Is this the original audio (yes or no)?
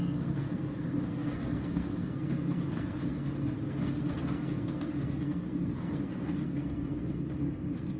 no